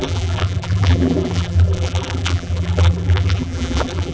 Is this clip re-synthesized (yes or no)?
yes